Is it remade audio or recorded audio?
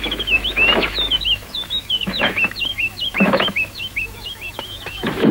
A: remade